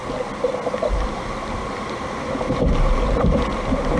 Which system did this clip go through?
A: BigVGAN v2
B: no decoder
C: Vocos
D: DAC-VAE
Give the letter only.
B